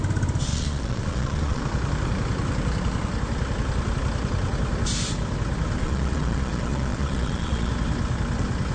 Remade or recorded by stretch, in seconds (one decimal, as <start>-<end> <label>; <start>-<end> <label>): 0.0-0.5 recorded; 0.5-1.6 remade; 1.6-5.8 recorded; 5.8-7.7 remade; 7.7-8.7 recorded